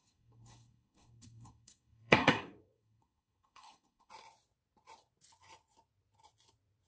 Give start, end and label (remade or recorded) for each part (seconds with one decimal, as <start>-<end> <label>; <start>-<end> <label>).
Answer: 0.0-4.1 remade; 4.1-6.9 recorded